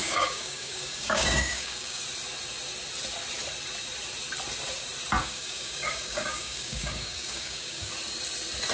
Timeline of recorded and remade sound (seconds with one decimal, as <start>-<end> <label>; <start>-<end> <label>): 0.0-2.0 remade; 2.0-5.2 recorded; 5.2-7.9 remade; 7.9-8.7 recorded